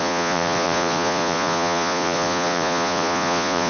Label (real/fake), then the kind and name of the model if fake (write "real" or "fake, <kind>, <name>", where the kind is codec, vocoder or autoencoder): fake, vocoder, Vocos